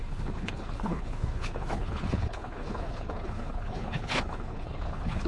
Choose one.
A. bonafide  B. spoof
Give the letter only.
B